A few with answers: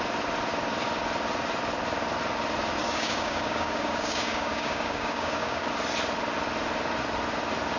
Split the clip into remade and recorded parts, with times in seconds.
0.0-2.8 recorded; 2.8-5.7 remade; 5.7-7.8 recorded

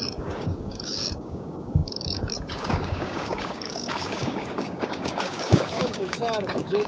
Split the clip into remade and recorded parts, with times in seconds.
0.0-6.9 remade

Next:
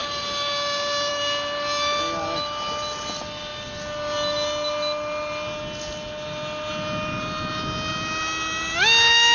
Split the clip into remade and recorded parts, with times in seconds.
0.0-9.3 recorded

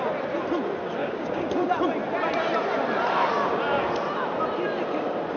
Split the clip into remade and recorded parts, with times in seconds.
0.0-1.0 recorded; 1.0-1.5 remade; 1.5-5.4 recorded

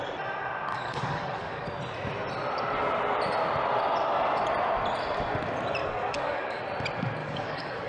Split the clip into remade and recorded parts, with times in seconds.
0.0-0.7 recorded; 0.7-1.7 remade; 1.7-5.8 recorded; 5.8-6.6 remade; 6.6-7.2 recorded; 7.2-7.9 remade